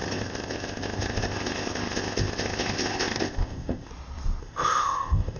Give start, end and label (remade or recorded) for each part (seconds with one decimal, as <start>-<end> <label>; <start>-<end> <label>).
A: 0.0-3.9 remade; 3.9-4.4 recorded; 4.4-5.4 remade